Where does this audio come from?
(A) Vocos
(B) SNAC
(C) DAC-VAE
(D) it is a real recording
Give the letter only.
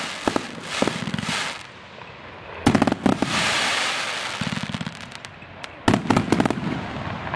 D